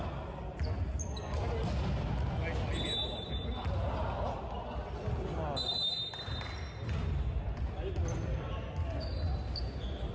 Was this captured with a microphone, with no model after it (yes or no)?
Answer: yes